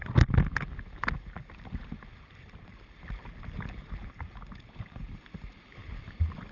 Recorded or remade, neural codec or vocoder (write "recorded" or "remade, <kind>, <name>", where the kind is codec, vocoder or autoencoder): recorded